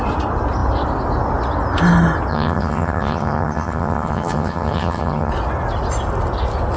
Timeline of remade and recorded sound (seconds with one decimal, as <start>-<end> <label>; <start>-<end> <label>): 0.0-2.3 recorded; 2.3-5.3 remade; 5.3-6.8 recorded